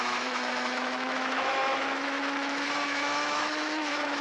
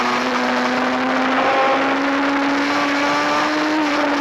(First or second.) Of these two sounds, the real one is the second